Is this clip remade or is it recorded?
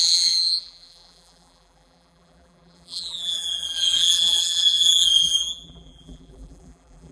remade